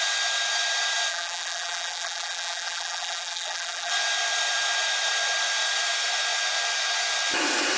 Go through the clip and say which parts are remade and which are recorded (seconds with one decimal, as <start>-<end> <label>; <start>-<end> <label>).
0.0-1.1 recorded; 1.1-3.9 remade; 3.9-7.8 recorded